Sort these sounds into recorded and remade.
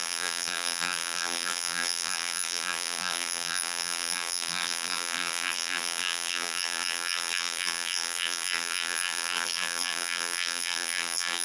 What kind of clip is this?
remade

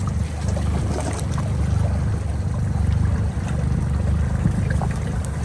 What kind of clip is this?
recorded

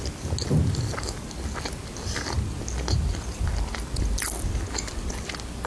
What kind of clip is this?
recorded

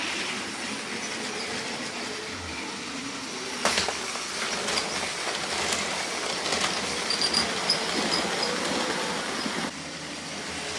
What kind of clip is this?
recorded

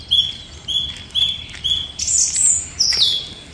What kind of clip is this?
recorded